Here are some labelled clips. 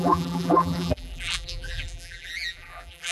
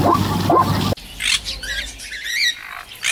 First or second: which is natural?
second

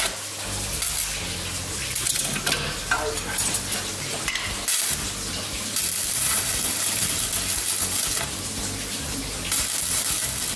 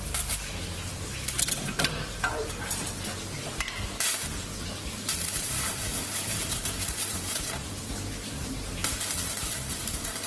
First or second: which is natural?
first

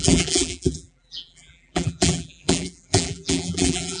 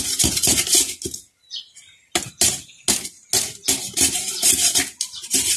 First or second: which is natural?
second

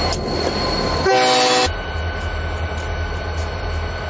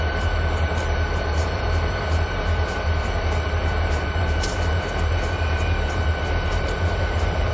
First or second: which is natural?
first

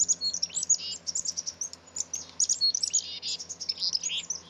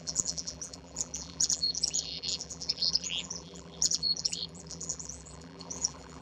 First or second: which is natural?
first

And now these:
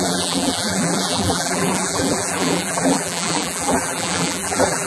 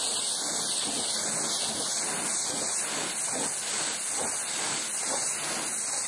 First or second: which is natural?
second